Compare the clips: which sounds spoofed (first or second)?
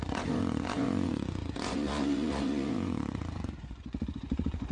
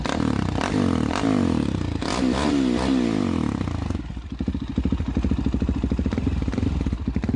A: first